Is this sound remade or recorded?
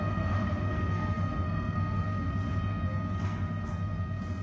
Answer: remade